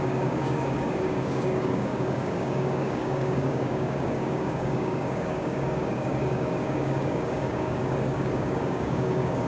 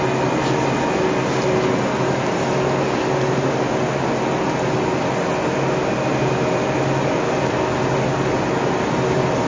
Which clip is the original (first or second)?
second